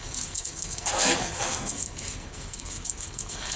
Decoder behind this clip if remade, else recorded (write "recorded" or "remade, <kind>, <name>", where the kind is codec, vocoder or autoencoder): remade, codec, SNAC